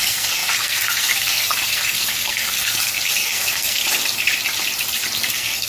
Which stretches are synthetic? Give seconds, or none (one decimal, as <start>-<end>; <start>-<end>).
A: 0.0-3.8; 5.3-5.7